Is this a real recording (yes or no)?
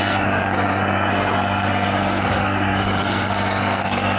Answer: no